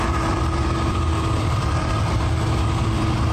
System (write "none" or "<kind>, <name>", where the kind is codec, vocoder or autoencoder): vocoder, BigVGAN v2